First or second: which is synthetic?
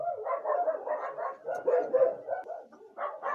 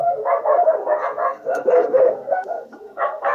second